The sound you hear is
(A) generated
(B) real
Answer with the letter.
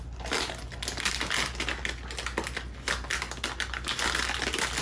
B